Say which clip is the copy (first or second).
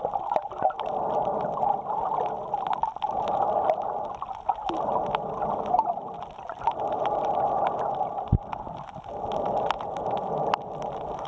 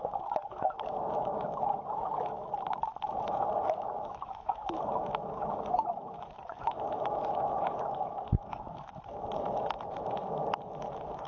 second